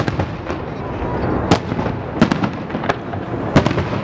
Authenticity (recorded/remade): recorded